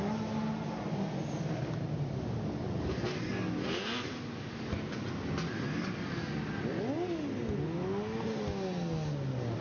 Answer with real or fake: real